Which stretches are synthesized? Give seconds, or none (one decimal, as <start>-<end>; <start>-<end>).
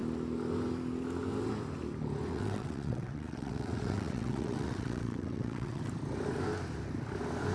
2.3-5.8